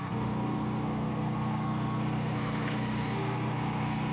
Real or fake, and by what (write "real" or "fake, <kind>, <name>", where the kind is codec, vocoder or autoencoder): fake, codec, SNAC